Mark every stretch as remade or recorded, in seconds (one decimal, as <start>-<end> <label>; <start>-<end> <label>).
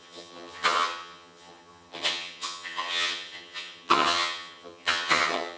0.0-5.6 remade